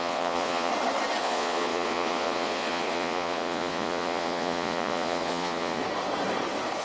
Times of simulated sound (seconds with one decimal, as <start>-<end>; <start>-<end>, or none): 0.0-0.7; 1.2-5.8